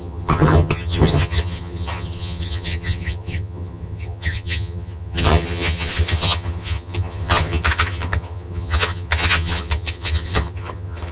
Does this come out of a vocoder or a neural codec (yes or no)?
yes